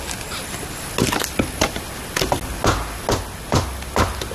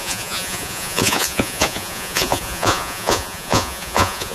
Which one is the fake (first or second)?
second